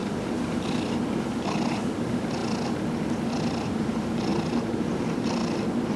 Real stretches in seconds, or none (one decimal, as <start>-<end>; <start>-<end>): 2.4-3.1; 4.3-5.0; 5.4-6.0